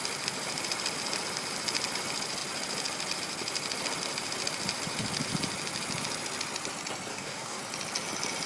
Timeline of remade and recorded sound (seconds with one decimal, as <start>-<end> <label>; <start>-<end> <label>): 0.0-7.1 recorded; 7.1-7.6 remade; 7.6-8.5 recorded